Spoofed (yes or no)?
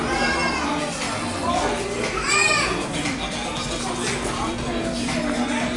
no